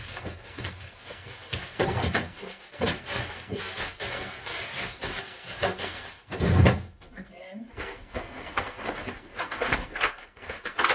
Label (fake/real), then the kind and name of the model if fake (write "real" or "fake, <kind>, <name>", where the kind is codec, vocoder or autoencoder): fake, codec, SNAC